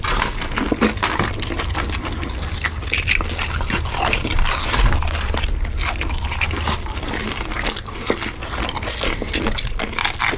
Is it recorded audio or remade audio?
recorded